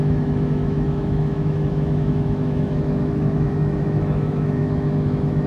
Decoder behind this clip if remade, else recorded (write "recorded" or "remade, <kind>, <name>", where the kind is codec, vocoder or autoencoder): remade, autoencoder, DAC-VAE